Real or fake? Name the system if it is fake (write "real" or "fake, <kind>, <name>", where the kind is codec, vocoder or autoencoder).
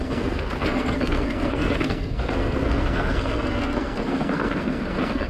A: fake, codec, SNAC